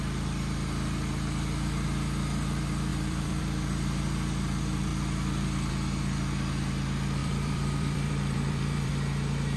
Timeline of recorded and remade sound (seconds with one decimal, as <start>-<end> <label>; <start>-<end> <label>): 0.0-2.9 recorded; 2.9-3.4 remade; 3.4-7.2 recorded; 7.2-8.9 remade; 8.9-9.6 recorded

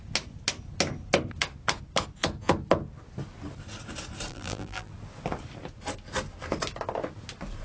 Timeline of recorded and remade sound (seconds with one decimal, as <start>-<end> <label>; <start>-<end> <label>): 0.0-4.3 recorded; 4.3-4.9 remade; 4.9-7.6 recorded

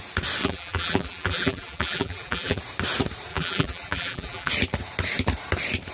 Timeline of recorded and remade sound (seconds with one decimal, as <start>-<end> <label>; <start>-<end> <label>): 0.0-0.4 recorded; 0.4-2.6 remade; 2.6-3.3 recorded; 3.3-4.5 remade; 4.5-5.9 recorded

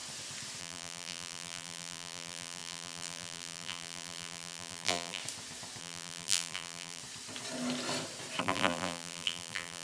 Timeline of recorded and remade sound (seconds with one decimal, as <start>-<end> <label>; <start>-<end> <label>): 0.0-0.6 recorded; 0.6-5.2 remade; 5.2-5.8 recorded; 5.8-7.0 remade; 7.0-8.4 recorded; 8.4-9.8 remade

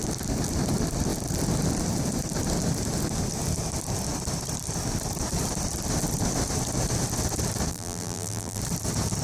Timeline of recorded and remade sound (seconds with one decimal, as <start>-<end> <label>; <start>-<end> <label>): 0.0-7.7 recorded; 7.7-8.6 remade; 8.6-9.2 recorded

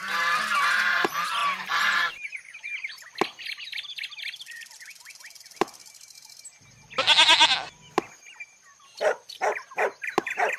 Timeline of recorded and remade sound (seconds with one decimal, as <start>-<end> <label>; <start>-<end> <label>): 0.0-1.4 recorded; 1.4-5.9 remade; 5.9-8.7 recorded; 8.7-9.3 remade; 9.3-10.6 recorded

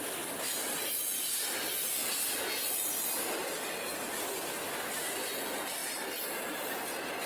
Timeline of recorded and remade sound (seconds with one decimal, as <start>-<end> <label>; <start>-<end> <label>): 0.0-7.3 recorded